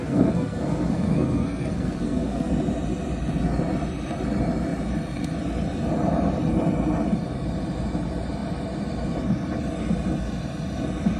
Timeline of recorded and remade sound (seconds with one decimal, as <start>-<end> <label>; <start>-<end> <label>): 0.0-2.5 remade; 2.5-11.2 recorded